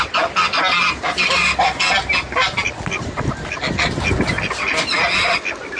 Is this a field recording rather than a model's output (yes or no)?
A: yes